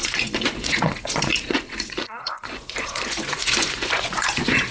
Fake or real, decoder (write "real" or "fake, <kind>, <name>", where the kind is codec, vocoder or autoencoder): fake, vocoder, Vocos